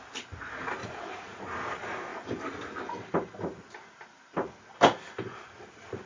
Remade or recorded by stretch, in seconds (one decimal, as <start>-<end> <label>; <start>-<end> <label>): 0.0-0.8 recorded; 0.8-1.4 remade; 1.4-6.1 recorded